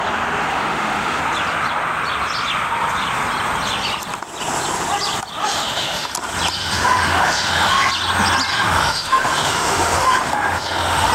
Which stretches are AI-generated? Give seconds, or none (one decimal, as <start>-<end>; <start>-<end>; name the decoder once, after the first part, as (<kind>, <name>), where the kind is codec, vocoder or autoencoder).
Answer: 0.5-1.2 (autoencoder, DAC-VAE); 5.4-6.1; 6.6-7.9; 8.5-11.1